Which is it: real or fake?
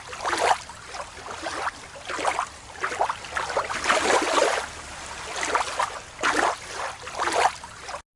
real